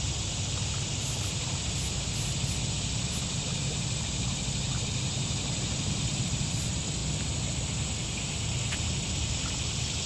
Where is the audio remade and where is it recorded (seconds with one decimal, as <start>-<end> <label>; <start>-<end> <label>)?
0.0-10.1 recorded